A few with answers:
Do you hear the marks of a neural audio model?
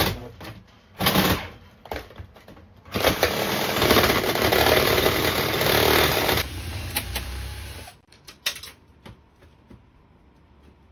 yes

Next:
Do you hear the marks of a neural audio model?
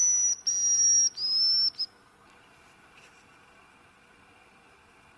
no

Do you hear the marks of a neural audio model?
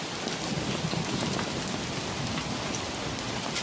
no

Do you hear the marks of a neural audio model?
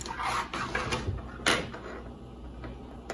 no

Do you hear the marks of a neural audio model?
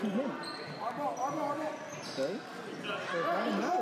no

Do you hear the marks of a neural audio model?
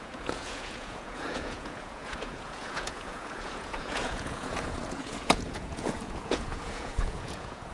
yes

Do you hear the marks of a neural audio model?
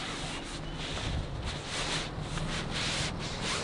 no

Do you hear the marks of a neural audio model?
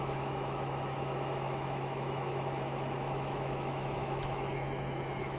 yes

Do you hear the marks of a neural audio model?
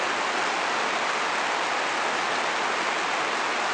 no